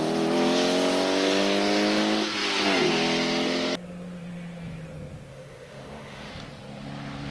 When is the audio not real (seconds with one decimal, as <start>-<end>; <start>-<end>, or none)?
5.3-6.3